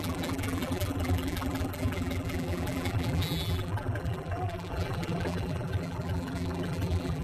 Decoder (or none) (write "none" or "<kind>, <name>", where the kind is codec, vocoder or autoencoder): vocoder, BigVGAN v2